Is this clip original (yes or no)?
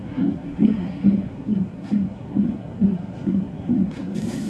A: no